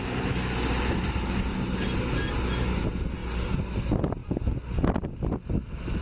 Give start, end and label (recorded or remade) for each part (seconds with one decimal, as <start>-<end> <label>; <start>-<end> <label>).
0.0-6.0 recorded